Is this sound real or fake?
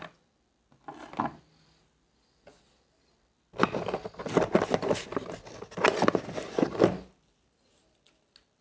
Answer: real